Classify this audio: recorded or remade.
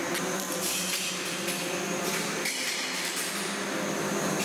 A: recorded